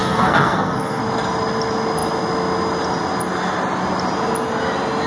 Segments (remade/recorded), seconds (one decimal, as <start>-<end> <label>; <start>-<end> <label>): 0.0-1.0 remade; 1.0-5.1 recorded